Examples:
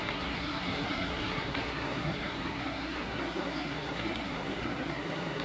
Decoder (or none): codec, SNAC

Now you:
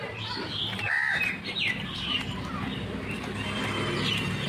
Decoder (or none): none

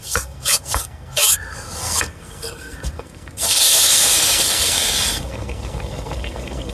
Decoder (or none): codec, SNAC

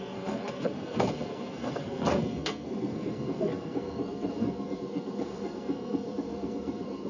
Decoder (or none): codec, SNAC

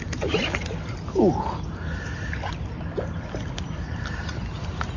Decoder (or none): none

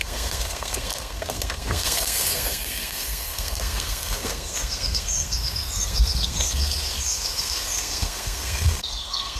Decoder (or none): codec, SNAC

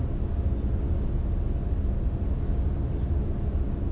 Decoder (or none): none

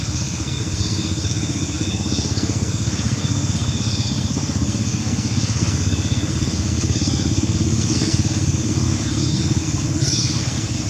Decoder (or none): codec, SNAC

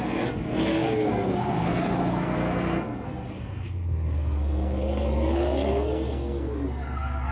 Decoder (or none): codec, SNAC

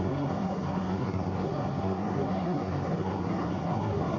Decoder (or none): codec, SNAC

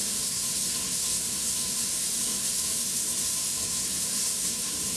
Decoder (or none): codec, SNAC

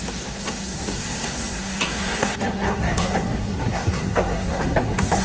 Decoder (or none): codec, SNAC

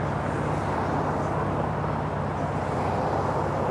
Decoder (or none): none